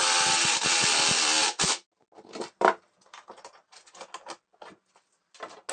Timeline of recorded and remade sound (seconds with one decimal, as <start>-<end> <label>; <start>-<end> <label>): 0.0-5.7 recorded